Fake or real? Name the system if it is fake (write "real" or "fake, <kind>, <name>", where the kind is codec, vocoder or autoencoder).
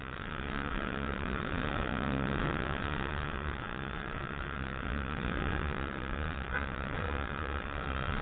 fake, vocoder, WaveNeXt